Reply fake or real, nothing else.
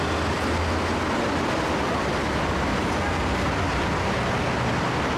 real